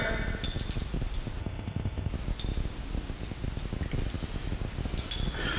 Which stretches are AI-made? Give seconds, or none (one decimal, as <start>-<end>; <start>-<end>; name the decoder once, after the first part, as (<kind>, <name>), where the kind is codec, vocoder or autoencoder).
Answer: 1.4-2.1 (codec, ZipCodec)

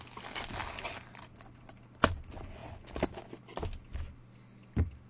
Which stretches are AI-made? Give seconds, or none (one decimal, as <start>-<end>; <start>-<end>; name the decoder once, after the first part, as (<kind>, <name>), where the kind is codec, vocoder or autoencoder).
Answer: none

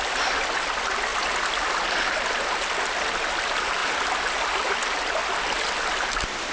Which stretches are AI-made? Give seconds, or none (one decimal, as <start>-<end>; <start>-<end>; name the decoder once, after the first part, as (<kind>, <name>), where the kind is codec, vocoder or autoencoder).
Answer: none

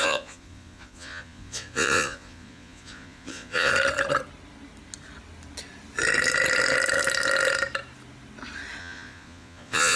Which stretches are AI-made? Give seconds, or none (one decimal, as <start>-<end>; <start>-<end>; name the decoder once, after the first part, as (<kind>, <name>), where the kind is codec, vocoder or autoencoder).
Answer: 0.0-3.7 (vocoder, Vocos); 8.8-10.0

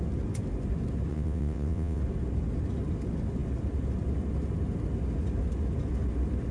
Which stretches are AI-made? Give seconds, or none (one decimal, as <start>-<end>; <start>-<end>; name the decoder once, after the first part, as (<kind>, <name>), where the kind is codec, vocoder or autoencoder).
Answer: 1.1-2.0 (vocoder, WaveNeXt)

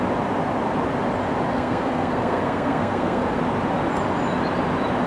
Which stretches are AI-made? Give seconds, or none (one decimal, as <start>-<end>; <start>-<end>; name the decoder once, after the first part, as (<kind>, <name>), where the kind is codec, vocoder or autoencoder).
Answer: 1.5-3.4 (codec, SNAC)

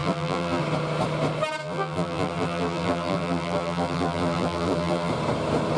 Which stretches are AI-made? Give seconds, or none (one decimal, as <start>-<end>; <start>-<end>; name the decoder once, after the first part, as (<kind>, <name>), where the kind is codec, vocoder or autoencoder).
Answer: 0.0-0.6 (vocoder, BigVGAN v2); 1.6-5.1